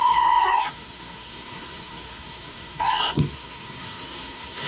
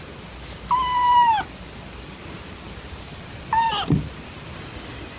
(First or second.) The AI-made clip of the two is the first